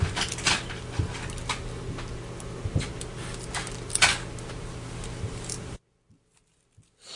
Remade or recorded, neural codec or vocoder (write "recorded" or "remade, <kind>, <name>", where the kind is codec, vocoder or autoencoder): recorded